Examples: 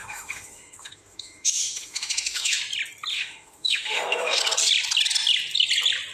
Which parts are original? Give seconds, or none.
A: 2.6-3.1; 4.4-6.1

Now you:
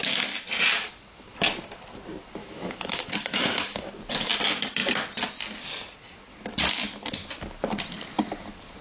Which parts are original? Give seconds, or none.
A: 0.0-2.4; 4.0-8.8

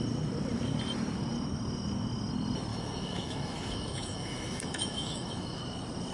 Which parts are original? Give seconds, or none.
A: 0.0-2.7; 5.6-6.1

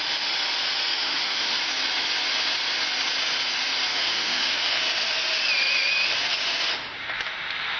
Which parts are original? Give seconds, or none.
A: 0.0-0.9; 1.6-3.9; 4.8-7.8

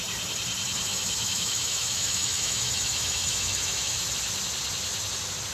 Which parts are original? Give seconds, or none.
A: 0.0-0.9; 4.1-5.5

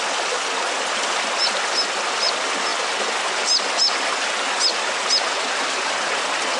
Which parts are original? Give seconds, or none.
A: 0.0-6.6

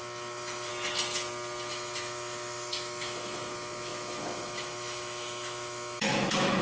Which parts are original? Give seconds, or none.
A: 0.7-1.7